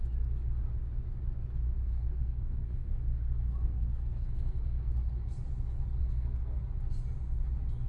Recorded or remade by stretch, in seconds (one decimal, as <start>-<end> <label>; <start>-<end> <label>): 0.0-1.8 recorded; 1.8-4.9 remade; 4.9-6.0 recorded; 6.0-6.6 remade; 6.6-7.9 recorded